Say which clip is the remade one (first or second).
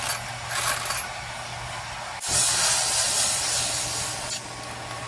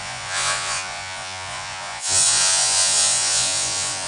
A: second